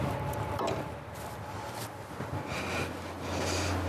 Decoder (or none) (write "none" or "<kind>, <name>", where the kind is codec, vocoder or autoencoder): none